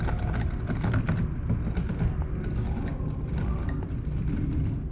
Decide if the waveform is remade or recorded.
recorded